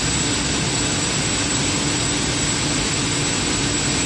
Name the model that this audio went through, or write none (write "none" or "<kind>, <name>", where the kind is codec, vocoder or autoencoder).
none